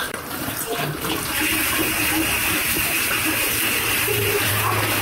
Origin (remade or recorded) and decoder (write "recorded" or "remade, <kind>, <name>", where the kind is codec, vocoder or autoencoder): remade, vocoder, BigVGAN v2